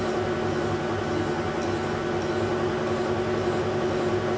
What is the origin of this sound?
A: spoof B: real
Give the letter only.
B